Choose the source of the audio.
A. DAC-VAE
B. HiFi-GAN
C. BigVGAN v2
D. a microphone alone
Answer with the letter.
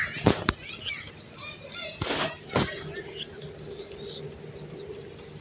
D